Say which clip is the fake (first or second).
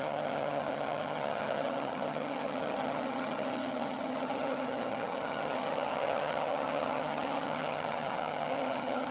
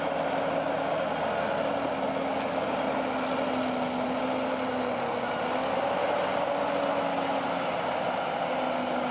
first